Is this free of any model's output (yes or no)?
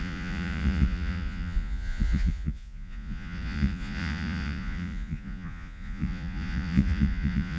no